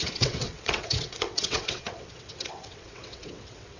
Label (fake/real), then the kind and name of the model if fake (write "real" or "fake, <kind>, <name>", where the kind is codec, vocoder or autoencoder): fake, vocoder, WaveNeXt